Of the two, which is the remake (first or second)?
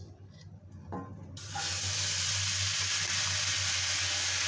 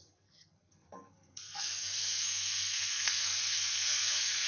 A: second